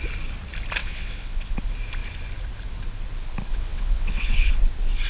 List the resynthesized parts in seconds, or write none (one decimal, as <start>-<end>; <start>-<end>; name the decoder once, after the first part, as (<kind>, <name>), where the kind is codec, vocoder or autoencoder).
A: 0.8-1.6 (vocoder, WaveNeXt); 3.5-4.5